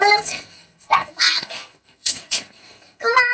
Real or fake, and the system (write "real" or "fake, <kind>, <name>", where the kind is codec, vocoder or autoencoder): fake, codec, SNAC